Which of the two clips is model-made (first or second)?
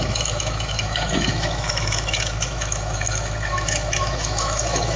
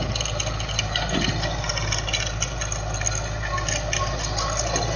first